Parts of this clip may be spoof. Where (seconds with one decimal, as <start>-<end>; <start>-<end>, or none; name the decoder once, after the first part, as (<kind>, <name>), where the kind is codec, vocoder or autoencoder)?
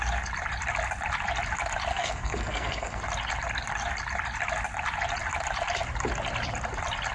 1.9-3.0 (codec, SNAC)